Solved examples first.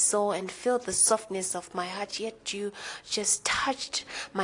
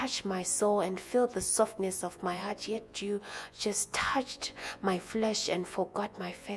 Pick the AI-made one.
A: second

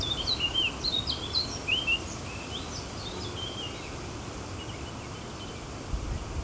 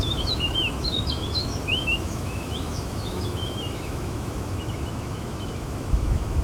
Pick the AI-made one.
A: second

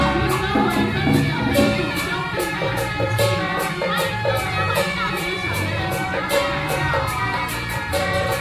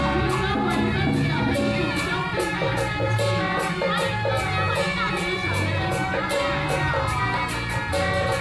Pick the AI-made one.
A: first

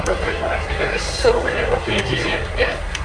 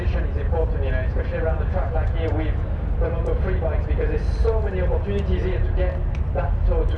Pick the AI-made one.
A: first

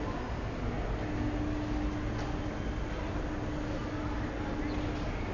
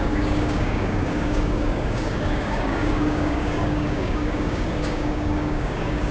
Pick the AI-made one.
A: second